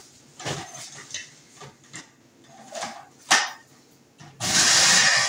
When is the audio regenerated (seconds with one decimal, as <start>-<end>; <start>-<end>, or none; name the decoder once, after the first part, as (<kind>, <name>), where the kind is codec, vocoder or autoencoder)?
3.6-4.7 (vocoder, BigVGAN v2)